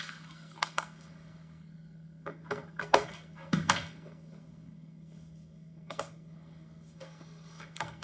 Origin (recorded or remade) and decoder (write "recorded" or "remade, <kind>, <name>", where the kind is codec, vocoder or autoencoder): remade, codec, SNAC